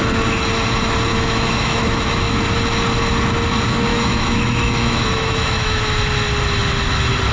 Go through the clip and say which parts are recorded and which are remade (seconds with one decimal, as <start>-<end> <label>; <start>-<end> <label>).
0.0-1.1 recorded; 1.1-2.4 remade; 2.4-3.9 recorded; 3.9-5.8 remade; 5.8-7.3 recorded